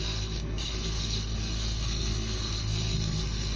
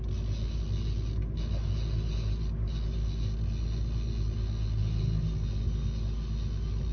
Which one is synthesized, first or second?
first